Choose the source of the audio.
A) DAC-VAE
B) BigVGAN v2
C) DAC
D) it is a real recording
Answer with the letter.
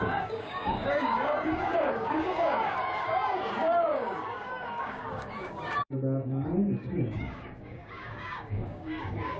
C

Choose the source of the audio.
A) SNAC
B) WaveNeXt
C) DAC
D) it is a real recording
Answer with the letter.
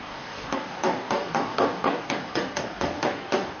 C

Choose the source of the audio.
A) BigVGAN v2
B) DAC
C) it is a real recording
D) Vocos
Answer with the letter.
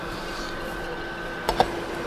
C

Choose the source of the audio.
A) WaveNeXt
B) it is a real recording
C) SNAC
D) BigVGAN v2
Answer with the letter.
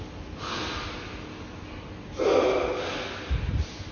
B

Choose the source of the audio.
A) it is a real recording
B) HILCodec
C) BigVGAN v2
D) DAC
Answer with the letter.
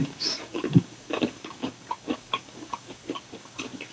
D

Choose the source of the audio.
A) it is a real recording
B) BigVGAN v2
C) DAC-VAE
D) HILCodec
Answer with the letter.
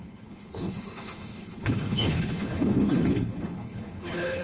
D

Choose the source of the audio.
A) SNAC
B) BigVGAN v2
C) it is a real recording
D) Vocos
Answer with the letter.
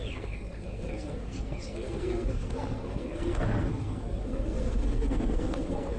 A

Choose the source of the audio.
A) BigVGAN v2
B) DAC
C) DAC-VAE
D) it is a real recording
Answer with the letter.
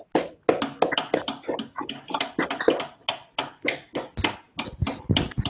D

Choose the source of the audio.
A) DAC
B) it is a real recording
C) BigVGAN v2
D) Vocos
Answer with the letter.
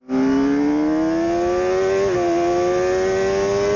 B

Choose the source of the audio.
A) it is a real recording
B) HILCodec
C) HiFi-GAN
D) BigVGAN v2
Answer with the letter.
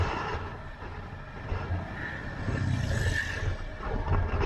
D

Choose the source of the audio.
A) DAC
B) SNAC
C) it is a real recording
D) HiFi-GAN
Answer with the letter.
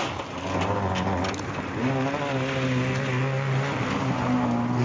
C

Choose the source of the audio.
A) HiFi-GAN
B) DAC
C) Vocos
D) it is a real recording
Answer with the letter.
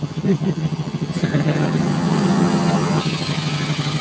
A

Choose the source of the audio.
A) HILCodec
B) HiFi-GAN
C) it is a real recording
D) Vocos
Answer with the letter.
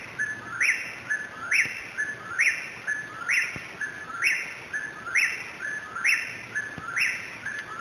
C